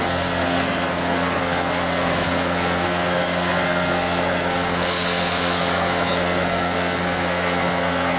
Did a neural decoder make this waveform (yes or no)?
yes